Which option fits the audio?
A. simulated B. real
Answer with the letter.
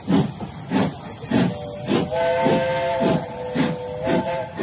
B